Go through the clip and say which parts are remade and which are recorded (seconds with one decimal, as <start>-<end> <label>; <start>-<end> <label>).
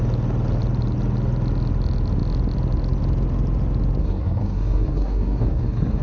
0.0-4.0 recorded; 4.0-6.0 remade